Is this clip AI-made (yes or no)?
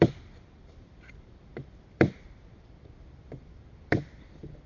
yes